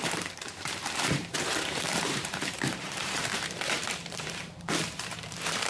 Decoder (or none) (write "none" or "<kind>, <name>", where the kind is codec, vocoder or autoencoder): vocoder, BigVGAN v2